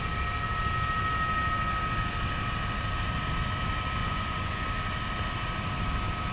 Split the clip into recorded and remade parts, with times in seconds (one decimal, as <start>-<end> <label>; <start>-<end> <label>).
0.0-4.0 recorded; 4.0-4.6 remade; 4.6-6.3 recorded